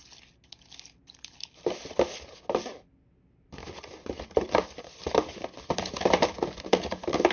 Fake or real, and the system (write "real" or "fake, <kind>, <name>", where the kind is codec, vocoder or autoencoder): real